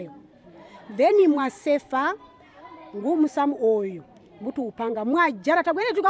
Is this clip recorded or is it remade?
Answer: remade